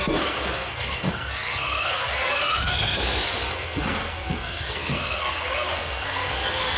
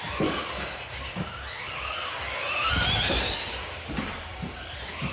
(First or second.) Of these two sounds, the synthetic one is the first